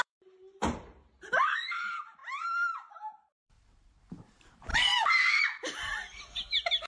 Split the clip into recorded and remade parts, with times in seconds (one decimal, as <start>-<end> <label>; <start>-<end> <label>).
0.0-2.2 remade; 2.2-3.4 recorded; 3.4-4.7 remade; 4.7-5.3 recorded; 5.3-6.9 remade